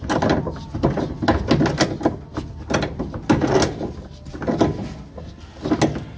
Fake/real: real